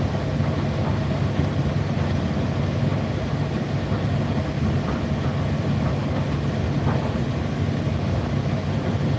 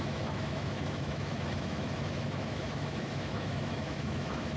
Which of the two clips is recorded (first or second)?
first